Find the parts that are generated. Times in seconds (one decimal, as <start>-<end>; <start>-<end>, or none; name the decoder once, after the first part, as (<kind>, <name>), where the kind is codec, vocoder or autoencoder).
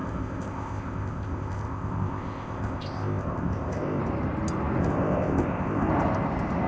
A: 0.0-4.0 (codec, ZipCodec); 4.8-5.9